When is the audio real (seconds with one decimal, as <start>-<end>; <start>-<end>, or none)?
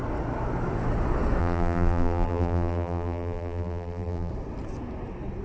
0.0-1.4; 4.3-5.4